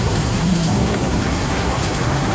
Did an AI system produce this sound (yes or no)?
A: yes